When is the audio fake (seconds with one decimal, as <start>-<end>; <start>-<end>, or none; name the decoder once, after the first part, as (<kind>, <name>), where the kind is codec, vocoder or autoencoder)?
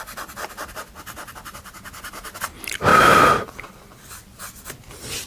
none